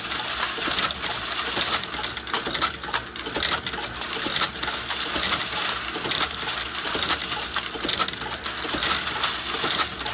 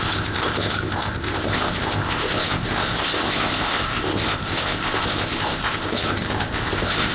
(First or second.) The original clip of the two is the first